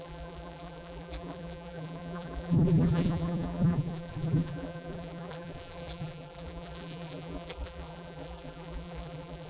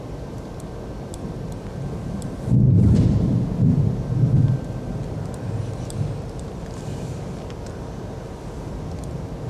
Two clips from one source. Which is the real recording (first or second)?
second